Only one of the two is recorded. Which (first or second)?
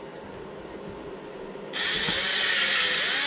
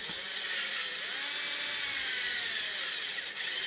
first